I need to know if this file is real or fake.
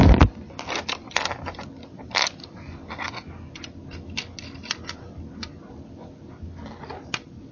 real